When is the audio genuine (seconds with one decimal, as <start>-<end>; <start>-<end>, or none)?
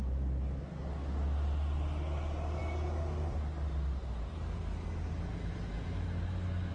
0.0-6.7